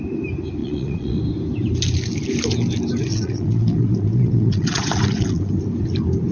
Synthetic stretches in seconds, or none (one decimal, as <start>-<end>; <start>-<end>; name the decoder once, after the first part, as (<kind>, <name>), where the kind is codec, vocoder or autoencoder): 0.6-1.2 (vocoder, Vocos); 3.1-5.5